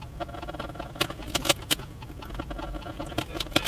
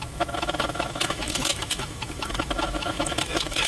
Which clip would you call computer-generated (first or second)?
second